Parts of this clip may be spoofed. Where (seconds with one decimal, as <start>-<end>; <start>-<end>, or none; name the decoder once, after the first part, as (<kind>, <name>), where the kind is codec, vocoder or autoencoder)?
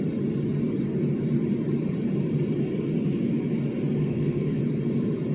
4.0-4.6 (codec, SNAC)